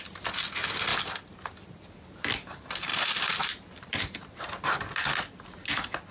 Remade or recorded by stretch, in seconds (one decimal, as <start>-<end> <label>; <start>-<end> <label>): 0.0-6.1 recorded